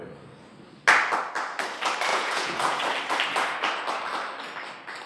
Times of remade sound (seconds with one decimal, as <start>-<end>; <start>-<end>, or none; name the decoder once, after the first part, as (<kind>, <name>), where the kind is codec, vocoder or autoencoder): 2.1-2.8 (vocoder, Vocos)